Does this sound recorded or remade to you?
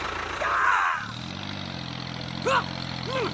recorded